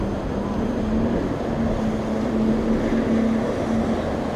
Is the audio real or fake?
real